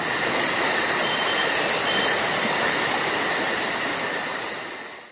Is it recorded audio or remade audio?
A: recorded